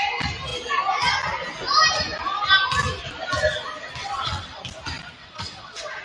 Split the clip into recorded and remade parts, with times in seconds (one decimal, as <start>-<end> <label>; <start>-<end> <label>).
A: 0.0-4.0 recorded; 4.0-4.6 remade; 4.6-5.2 recorded; 5.2-6.0 remade